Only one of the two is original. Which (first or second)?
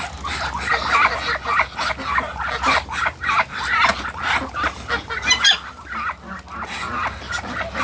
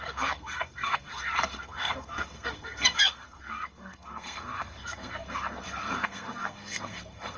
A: first